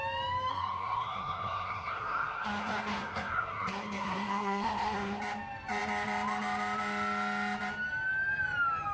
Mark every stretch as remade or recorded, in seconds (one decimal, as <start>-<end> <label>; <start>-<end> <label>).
0.0-0.5 recorded; 0.5-5.2 remade; 5.2-8.9 recorded